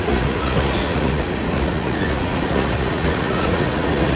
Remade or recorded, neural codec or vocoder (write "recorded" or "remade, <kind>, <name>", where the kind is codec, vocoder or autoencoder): remade, vocoder, Vocos